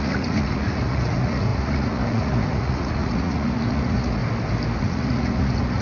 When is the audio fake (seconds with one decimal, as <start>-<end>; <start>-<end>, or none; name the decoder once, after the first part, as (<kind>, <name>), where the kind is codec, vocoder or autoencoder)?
0.0-4.2 (vocoder, Vocos); 4.8-5.8

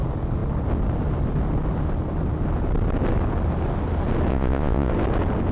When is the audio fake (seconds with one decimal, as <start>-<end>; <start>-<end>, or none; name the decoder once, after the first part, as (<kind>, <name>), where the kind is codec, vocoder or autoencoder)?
4.3-4.9 (vocoder, Vocos)

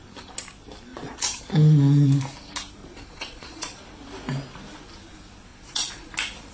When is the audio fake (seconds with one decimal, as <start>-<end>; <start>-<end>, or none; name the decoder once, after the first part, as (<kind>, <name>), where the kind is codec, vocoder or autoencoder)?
0.9-1.4 (vocoder, Vocos); 2.8-3.8; 5.5-6.1

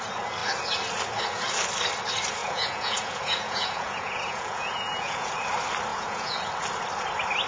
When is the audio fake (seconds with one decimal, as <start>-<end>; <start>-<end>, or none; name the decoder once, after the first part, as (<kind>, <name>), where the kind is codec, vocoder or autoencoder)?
2.4-5.3 (vocoder, Vocos); 5.9-6.5

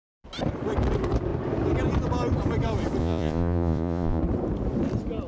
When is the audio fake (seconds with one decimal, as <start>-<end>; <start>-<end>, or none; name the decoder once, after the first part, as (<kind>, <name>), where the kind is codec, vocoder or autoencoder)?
3.0-4.2 (vocoder, Vocos)

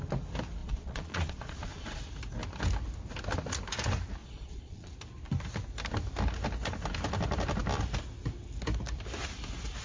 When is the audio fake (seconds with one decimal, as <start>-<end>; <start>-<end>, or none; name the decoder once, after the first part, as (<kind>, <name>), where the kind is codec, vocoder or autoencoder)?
0.6-2.0 (vocoder, Vocos); 4.2-4.9

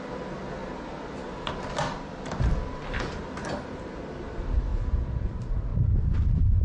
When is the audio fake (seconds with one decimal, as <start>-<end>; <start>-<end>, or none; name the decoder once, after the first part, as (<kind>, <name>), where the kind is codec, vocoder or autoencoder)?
4.7-5.3 (vocoder, Vocos)